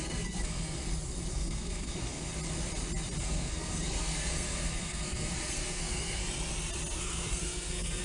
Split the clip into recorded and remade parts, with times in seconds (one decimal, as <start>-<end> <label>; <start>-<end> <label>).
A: 0.0-0.8 remade; 0.8-1.3 recorded; 1.3-2.3 remade; 2.3-3.2 recorded; 3.2-6.2 remade; 6.2-7.0 recorded; 7.0-8.0 remade